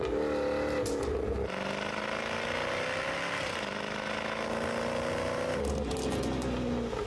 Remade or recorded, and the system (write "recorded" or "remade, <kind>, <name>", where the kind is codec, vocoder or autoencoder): recorded